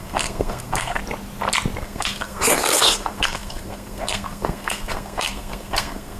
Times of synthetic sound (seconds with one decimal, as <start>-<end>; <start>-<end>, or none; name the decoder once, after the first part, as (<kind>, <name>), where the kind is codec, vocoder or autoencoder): 0.0-1.0 (codec, SNAC); 1.8-6.2